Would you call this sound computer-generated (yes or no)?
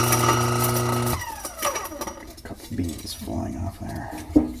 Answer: no